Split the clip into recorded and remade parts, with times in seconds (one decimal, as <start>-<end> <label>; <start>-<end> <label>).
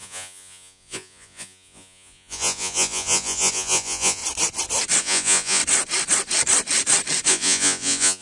0.0-4.2 remade; 4.2-5.0 recorded; 5.0-5.6 remade; 5.6-7.3 recorded; 7.3-8.2 remade